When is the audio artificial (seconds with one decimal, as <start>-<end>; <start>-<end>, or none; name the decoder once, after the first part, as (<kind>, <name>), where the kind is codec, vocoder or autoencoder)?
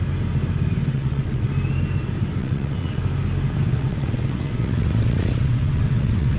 0.9-1.5 (vocoder, WaveNeXt); 2.4-3.0; 3.7-6.4